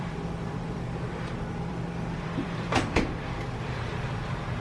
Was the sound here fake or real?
fake